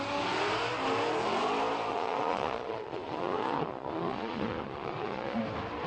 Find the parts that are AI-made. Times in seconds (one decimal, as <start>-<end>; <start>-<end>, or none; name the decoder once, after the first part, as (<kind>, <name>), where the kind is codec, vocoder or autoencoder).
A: 1.9-5.4 (vocoder, Vocos)